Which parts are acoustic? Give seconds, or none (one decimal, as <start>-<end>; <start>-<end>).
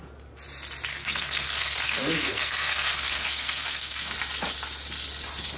0.0-0.9; 4.1-5.6